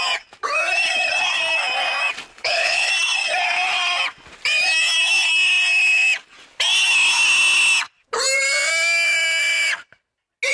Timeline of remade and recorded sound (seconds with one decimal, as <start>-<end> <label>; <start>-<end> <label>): 0.0-2.3 recorded; 2.3-2.9 remade; 2.9-10.5 recorded